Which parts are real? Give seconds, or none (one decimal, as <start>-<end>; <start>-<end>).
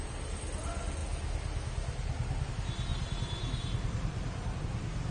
0.0-2.9; 4.6-5.1